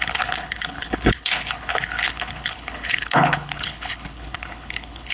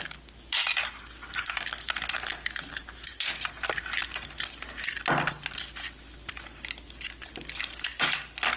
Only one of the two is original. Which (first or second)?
second